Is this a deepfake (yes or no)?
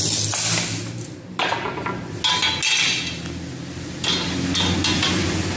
no